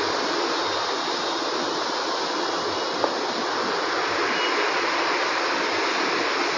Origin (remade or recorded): recorded